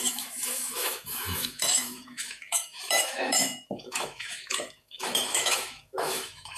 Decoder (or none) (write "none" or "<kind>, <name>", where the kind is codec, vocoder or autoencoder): autoencoder, DAC-VAE